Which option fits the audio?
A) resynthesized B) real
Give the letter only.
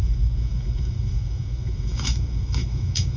A